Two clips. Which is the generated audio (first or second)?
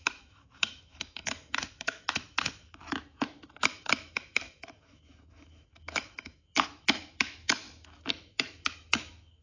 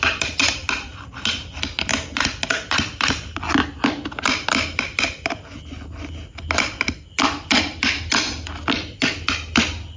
first